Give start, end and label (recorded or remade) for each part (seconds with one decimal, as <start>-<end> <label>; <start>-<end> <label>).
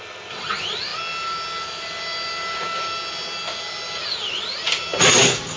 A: 0.0-5.6 recorded